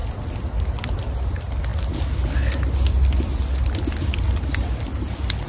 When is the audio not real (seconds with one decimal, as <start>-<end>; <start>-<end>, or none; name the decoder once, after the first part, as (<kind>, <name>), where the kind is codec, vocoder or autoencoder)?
0.0-0.8 (vocoder, BigVGAN v2)